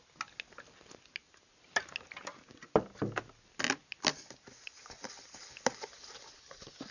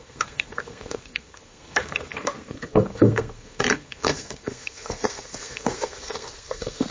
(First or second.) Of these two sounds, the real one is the first